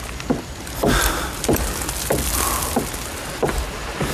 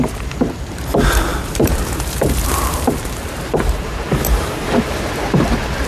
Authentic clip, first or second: first